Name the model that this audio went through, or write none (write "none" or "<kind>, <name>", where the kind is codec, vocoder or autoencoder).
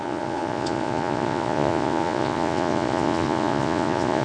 vocoder, Vocos